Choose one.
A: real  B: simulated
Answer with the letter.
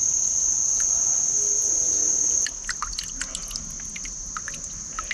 A